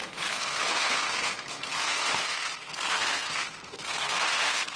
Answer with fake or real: fake